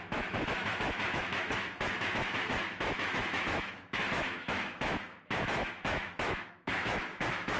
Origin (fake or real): fake